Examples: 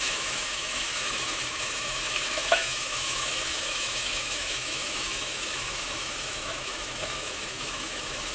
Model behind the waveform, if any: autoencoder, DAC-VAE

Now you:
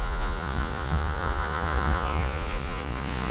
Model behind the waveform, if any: vocoder, Vocos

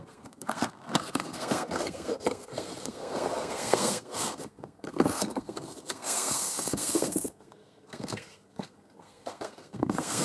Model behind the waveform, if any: codec, SNAC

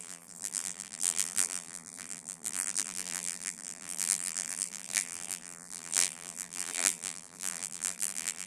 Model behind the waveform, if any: vocoder, BigVGAN v2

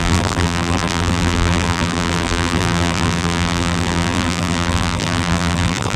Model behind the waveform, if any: vocoder, BigVGAN v2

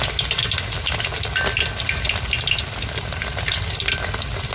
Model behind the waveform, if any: none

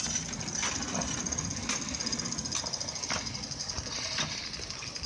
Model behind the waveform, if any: none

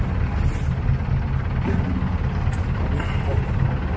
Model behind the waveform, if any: none